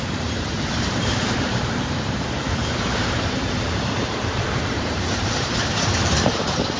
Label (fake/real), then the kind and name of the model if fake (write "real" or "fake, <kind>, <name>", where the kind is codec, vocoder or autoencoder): fake, vocoder, BigVGAN v2